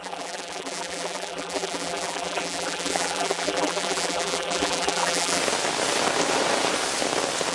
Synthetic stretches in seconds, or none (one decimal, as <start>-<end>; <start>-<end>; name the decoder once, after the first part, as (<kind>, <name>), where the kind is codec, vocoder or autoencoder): 0.0-5.4 (vocoder, BigVGAN v2)